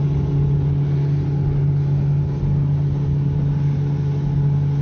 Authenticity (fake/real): real